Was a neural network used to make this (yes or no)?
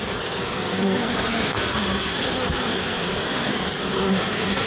yes